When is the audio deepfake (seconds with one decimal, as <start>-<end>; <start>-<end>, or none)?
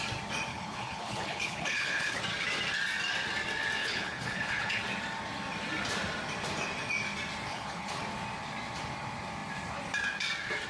0.5-2.2; 3.8-4.8; 7.5-8.0